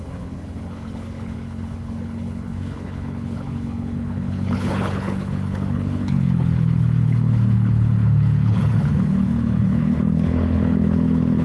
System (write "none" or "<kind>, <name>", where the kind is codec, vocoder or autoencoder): codec, HILCodec